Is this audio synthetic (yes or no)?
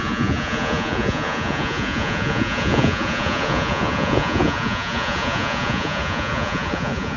yes